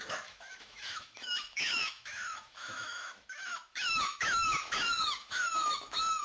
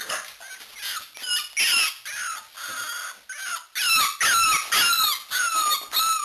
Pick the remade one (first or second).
first